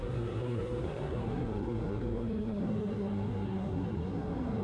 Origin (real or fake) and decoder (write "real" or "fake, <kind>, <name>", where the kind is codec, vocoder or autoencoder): fake, codec, SNAC